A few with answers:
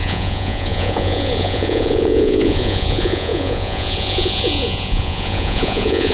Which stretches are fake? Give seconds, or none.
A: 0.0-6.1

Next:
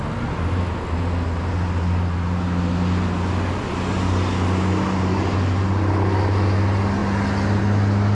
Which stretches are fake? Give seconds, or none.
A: none

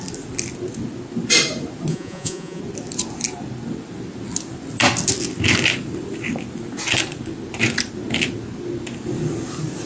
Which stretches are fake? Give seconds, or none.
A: 1.9-2.6

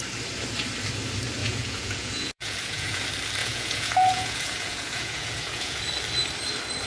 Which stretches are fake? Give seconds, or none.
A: 1.4-3.0; 3.4-5.8

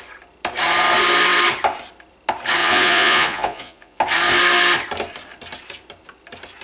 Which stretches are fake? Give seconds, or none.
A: 2.6-4.0

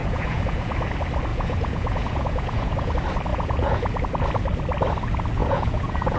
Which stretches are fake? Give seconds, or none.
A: 0.0-0.7; 1.3-2.9; 3.3-4.0; 5.4-6.2